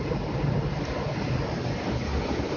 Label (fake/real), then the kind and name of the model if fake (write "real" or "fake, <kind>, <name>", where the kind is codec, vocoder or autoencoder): real